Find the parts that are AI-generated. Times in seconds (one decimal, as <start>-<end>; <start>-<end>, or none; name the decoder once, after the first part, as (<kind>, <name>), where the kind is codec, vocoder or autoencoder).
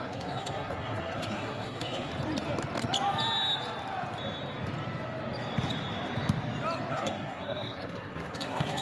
0.0-2.1 (codec, SNAC); 6.9-8.8